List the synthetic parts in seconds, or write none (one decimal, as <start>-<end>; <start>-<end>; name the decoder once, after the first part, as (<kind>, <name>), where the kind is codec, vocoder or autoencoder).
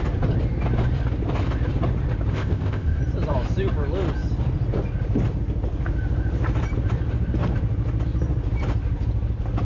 2.3-3.0 (codec, ZipCodec)